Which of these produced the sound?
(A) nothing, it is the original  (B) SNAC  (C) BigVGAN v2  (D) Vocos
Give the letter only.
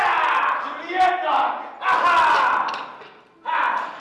A